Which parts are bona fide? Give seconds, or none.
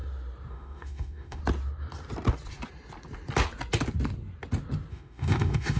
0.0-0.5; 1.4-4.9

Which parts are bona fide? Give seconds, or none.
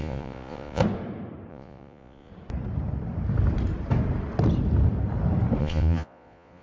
0.8-1.5; 2.3-5.6